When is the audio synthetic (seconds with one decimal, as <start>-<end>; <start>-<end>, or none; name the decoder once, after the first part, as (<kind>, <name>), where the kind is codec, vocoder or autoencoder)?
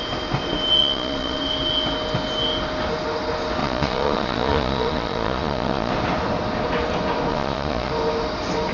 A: 0.8-1.4 (vocoder, Vocos); 3.6-5.9; 7.3-7.9